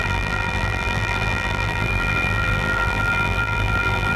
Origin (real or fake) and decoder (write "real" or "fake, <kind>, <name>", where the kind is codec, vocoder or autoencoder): fake, vocoder, BigVGAN v2